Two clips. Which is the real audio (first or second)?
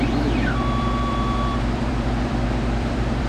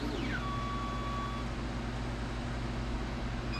second